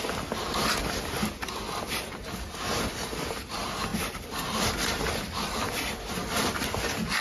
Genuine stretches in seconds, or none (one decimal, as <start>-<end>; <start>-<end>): 0.0-7.2